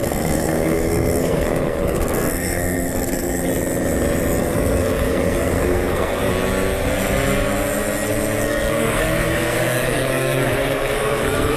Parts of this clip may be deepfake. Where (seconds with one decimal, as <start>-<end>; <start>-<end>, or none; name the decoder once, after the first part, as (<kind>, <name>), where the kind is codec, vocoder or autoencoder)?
0.0-3.5 (codec, SNAC); 4.4-6.3; 8.4-11.6